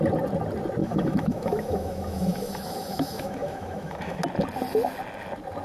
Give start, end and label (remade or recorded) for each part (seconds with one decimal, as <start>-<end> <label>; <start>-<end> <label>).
0.0-0.8 recorded; 0.8-4.2 remade; 4.2-5.6 recorded